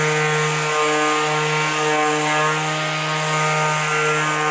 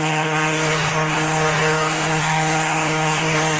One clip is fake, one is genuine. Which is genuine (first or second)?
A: first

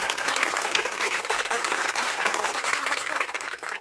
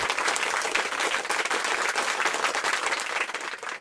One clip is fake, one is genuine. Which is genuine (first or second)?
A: second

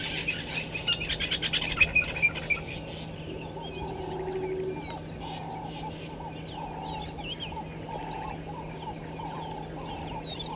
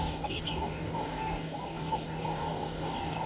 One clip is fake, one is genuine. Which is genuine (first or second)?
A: first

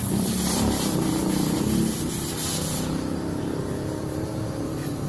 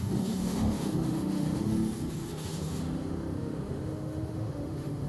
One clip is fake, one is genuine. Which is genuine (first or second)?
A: first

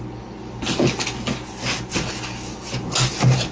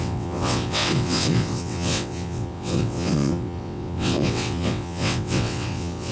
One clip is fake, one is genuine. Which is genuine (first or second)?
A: first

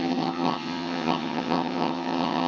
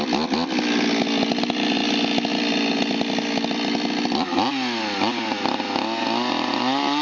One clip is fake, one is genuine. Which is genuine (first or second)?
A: second